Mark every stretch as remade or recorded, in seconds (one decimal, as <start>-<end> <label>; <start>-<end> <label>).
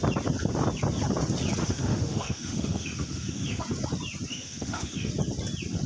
0.0-1.6 recorded; 1.6-3.6 remade; 3.6-4.3 recorded; 4.3-5.1 remade; 5.1-5.9 recorded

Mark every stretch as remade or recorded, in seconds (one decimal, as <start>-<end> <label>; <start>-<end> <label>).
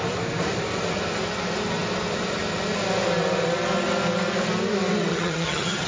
0.0-5.1 recorded; 5.1-5.9 remade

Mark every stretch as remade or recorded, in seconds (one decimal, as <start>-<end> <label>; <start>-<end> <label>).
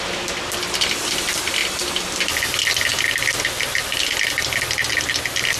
0.0-5.6 recorded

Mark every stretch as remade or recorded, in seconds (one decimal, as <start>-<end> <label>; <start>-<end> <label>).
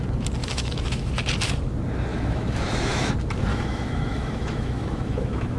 0.0-0.4 recorded; 0.4-1.1 remade; 1.1-2.1 recorded; 2.1-3.1 remade; 3.1-3.5 recorded; 3.5-5.6 remade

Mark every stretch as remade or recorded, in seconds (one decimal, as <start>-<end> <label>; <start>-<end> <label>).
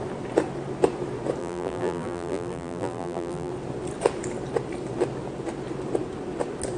0.0-1.4 recorded; 1.4-3.5 remade; 3.5-6.8 recorded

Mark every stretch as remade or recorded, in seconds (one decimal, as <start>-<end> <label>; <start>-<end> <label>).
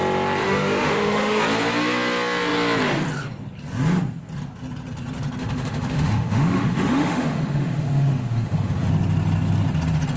0.0-0.4 recorded; 0.4-1.4 remade; 1.4-5.4 recorded; 5.4-8.9 remade; 8.9-10.2 recorded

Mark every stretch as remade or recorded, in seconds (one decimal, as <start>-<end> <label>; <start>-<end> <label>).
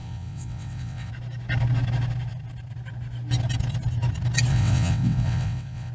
0.0-1.1 remade; 1.1-4.5 recorded; 4.5-5.9 remade